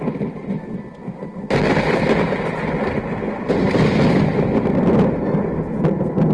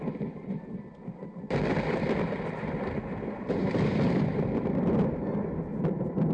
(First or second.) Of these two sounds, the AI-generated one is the second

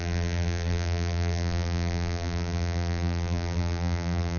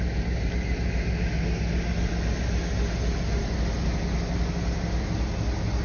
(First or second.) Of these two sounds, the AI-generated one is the first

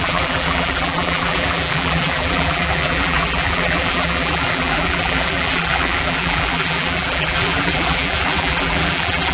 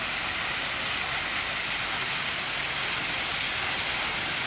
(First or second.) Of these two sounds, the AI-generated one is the first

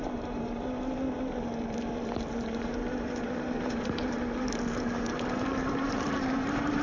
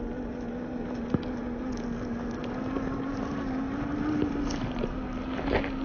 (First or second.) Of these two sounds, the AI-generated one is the first